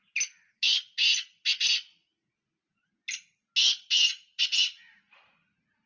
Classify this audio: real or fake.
real